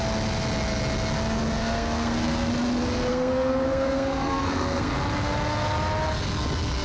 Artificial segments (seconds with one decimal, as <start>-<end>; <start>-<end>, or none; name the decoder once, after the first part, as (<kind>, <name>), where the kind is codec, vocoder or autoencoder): 1.6-2.5 (codec, SNAC); 3.1-4.9